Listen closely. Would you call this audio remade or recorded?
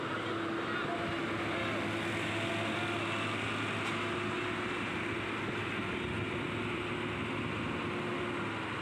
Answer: recorded